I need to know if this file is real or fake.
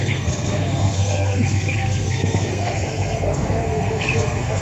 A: fake